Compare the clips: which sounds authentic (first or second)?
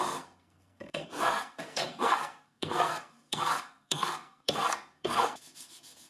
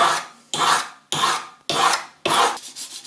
second